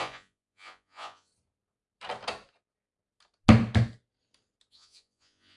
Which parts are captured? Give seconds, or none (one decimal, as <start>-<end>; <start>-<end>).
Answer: 1.3-4.7